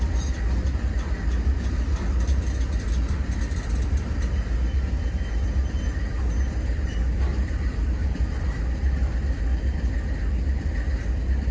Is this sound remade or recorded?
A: remade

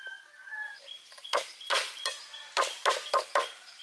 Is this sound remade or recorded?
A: recorded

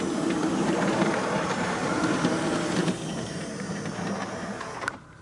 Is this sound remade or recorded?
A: remade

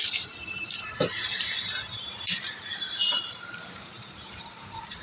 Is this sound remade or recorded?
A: remade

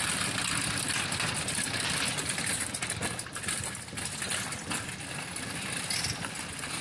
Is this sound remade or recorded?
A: recorded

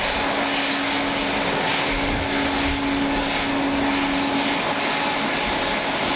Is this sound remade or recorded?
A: recorded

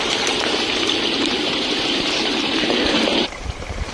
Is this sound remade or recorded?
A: remade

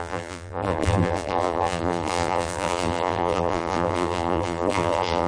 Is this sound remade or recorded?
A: remade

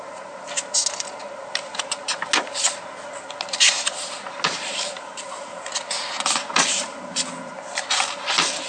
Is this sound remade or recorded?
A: recorded